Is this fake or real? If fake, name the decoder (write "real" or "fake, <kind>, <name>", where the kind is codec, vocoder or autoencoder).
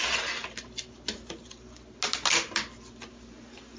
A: real